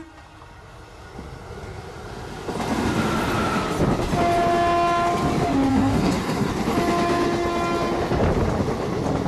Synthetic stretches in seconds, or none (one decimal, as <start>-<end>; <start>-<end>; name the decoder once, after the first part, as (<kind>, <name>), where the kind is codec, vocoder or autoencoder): 5.7-6.5 (codec, SNAC)